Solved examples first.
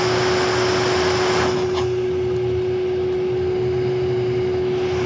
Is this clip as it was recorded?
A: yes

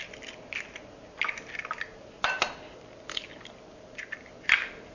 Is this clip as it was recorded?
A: yes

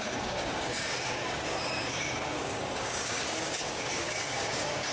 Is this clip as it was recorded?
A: no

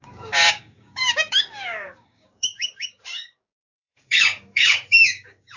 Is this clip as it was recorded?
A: no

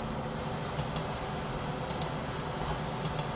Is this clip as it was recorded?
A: yes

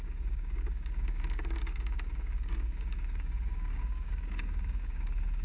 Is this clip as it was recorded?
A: no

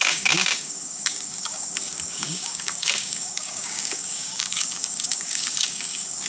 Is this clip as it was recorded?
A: no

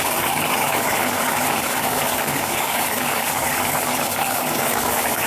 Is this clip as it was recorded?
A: no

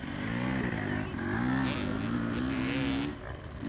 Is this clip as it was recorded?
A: yes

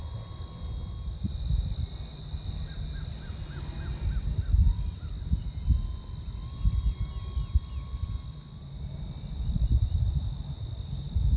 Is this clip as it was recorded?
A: yes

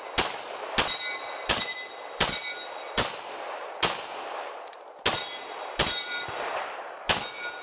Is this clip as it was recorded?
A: yes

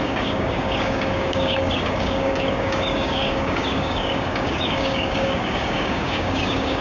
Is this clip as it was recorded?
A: no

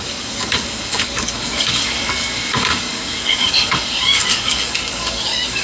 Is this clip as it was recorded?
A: no